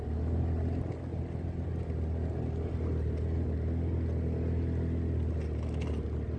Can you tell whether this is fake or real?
real